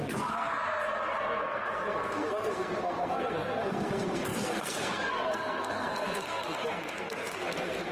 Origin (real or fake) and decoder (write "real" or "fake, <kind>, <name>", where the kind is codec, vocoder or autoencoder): fake, codec, SNAC